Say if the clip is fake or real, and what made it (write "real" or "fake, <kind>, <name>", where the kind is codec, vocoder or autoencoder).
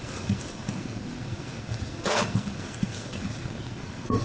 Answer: fake, codec, SNAC